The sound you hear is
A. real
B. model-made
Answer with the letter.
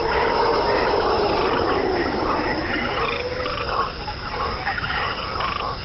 A